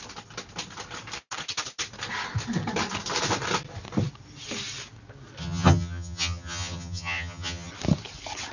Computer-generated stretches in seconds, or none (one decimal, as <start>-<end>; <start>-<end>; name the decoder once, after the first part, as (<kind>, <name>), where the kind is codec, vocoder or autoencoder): 5.4-7.7 (vocoder, HiFi-GAN)